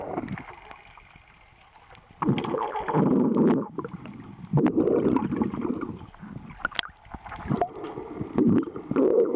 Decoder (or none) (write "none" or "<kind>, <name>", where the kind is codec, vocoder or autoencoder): none